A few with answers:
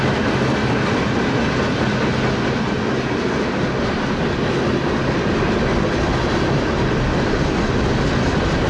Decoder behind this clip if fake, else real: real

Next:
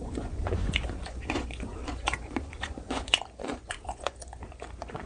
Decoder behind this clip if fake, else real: fake, vocoder, Vocos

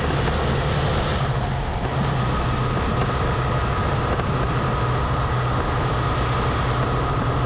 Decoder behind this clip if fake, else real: real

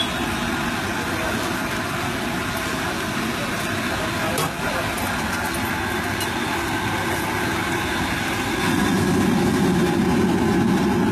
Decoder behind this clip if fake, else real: real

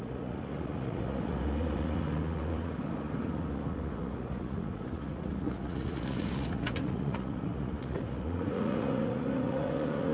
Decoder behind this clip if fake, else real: fake, vocoder, Vocos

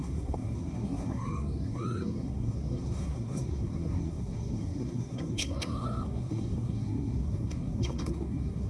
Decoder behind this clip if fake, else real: fake, codec, SNAC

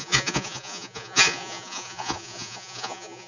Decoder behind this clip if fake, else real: fake, vocoder, Vocos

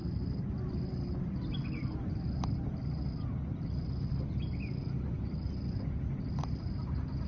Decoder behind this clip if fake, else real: real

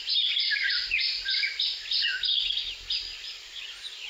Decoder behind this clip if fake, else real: real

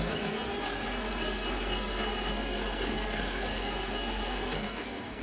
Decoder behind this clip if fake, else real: fake, codec, SNAC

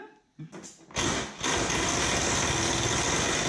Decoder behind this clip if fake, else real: real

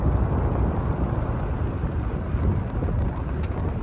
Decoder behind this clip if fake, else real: real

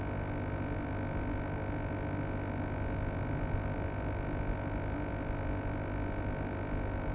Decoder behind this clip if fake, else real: real